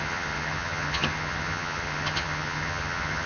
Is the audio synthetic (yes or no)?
yes